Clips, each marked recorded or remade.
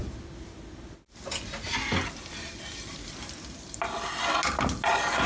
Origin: recorded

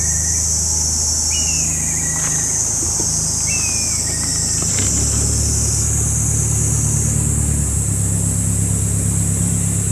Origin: recorded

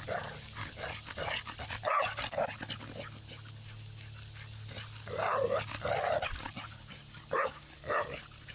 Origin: recorded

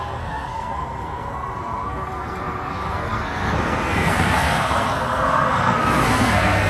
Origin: remade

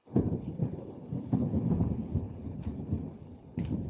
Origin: remade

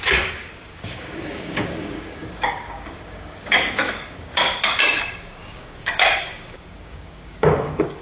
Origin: remade